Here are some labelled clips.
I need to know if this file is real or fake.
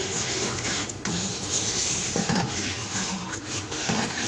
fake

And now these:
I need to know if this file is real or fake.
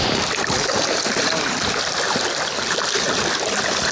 real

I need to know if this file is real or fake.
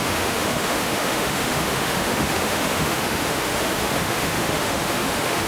fake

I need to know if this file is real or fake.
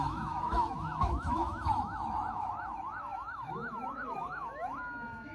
fake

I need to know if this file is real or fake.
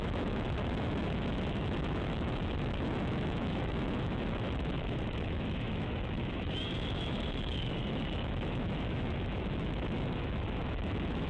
fake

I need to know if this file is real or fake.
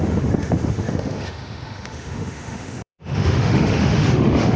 fake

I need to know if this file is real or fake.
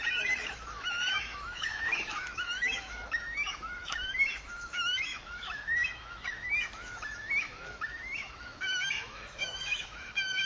fake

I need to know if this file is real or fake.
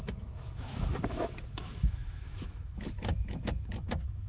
fake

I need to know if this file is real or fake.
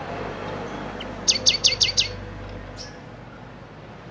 real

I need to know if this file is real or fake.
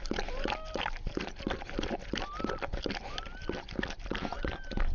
real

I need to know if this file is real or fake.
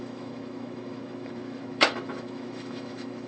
fake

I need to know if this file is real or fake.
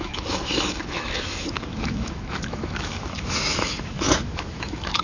fake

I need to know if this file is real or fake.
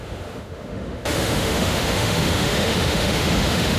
fake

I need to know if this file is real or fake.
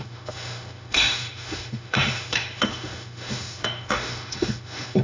fake